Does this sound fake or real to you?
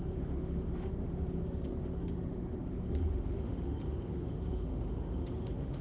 fake